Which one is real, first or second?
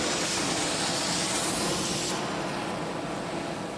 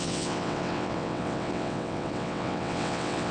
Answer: first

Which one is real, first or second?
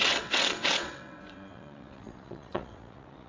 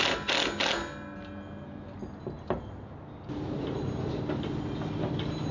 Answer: second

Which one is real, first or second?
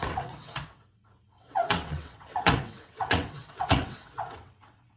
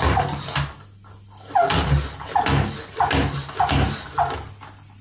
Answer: second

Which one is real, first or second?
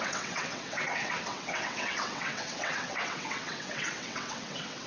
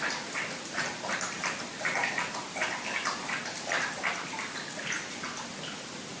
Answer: second